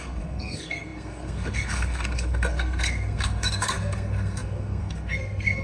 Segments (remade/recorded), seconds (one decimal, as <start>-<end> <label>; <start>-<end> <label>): 0.0-5.6 remade